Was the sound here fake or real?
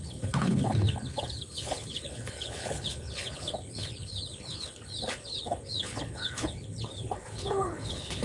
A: fake